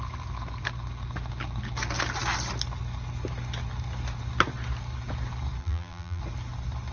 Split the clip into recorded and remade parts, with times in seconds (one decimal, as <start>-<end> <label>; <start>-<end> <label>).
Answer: 0.0-5.6 recorded; 5.6-6.2 remade; 6.2-6.9 recorded